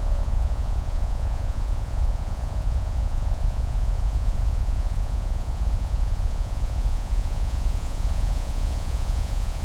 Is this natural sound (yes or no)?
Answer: no